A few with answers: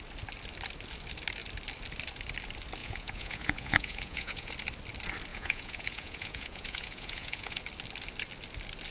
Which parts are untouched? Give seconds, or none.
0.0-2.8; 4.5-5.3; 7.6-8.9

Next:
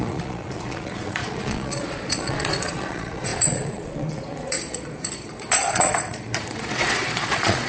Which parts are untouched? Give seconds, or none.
none

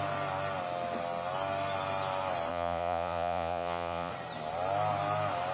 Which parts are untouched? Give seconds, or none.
0.0-2.5; 4.1-5.5

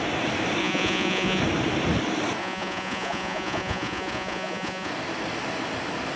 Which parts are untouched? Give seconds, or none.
0.0-0.6; 1.4-2.4; 4.9-6.2

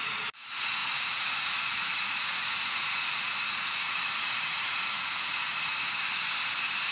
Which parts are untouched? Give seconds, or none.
5.7-6.9

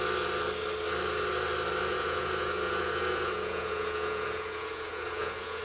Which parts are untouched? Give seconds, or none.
0.0-1.9

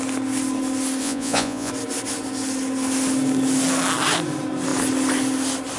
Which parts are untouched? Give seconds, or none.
0.0-1.0; 1.7-5.8